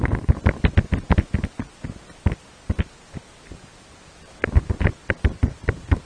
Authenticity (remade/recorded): recorded